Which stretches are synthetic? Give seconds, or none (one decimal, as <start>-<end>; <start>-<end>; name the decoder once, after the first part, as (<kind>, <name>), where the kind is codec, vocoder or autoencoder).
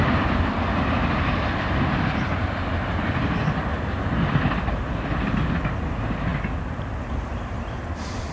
3.7-5.5 (vocoder, BigVGAN v2)